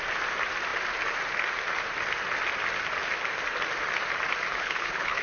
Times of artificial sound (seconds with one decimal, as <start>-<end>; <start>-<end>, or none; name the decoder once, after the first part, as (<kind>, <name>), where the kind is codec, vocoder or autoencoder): 4.5-5.2 (codec, HILCodec)